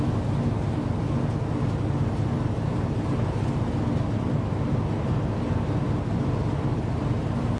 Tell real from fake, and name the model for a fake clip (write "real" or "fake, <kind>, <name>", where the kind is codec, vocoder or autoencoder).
real